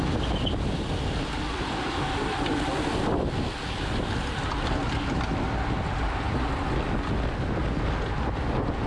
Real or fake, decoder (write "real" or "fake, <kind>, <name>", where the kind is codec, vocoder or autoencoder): real